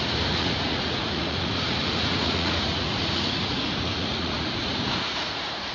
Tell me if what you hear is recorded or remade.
remade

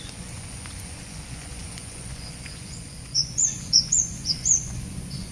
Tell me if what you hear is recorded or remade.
remade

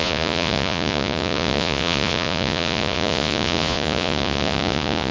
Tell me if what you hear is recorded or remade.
remade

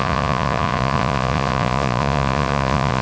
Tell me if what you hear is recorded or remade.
remade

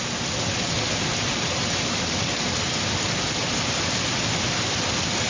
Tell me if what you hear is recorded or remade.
recorded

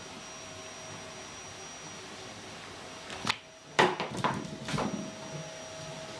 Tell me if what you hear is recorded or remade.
recorded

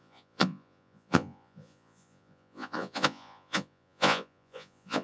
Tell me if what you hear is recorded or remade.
remade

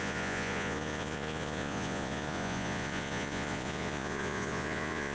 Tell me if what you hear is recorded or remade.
remade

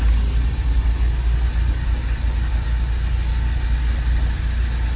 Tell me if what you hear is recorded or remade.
recorded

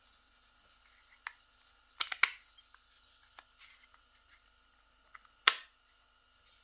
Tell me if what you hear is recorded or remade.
recorded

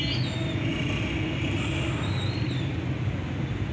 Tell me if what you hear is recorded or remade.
recorded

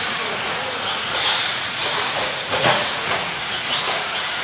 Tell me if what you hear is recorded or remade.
remade